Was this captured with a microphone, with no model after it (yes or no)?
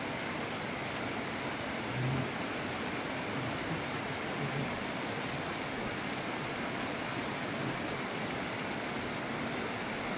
yes